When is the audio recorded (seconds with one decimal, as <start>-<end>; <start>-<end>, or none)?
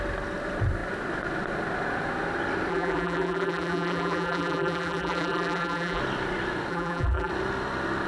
0.0-2.7; 6.0-6.7; 7.3-8.1